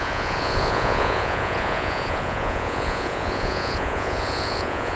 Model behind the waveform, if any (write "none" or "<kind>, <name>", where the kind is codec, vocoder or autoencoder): vocoder, Vocos